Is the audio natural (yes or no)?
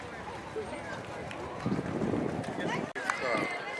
yes